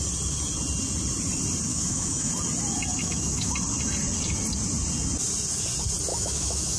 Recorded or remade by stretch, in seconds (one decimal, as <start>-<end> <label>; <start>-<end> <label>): 0.0-1.7 recorded; 1.7-2.3 remade; 2.3-3.0 recorded; 3.0-3.5 remade; 3.5-6.1 recorded; 6.1-6.8 remade